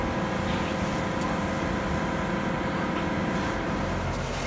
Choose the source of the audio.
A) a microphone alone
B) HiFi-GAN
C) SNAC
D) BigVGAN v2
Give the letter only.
A